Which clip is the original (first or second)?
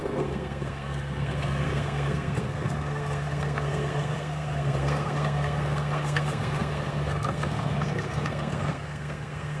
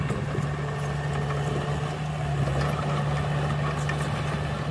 second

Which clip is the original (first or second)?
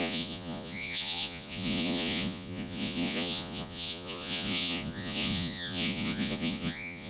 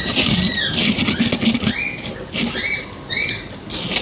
second